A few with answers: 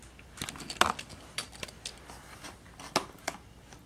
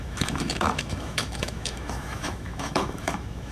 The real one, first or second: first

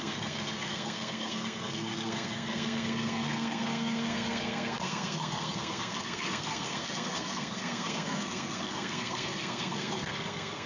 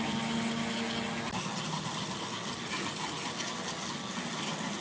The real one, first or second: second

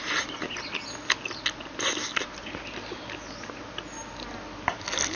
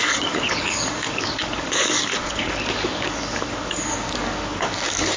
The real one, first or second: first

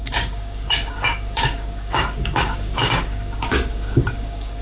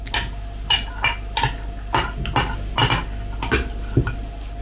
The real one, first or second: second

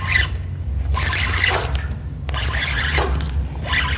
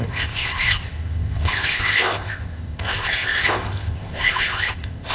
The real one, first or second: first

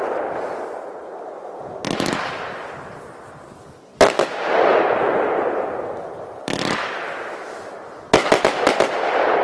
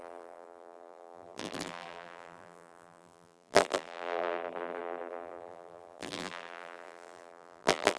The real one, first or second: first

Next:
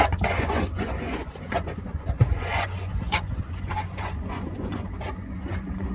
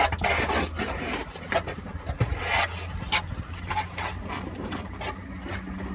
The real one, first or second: second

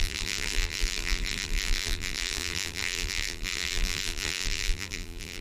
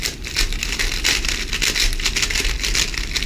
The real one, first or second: second